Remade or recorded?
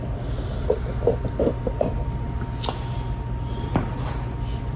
recorded